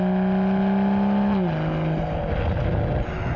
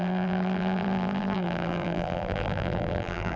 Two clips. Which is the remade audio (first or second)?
second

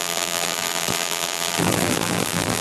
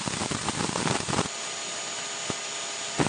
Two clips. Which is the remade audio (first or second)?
first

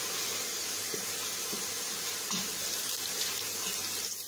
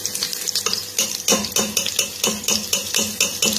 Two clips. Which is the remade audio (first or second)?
first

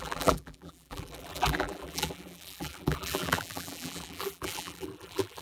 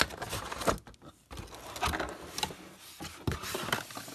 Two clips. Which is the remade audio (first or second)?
first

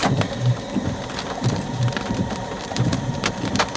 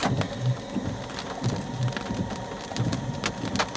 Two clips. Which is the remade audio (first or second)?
first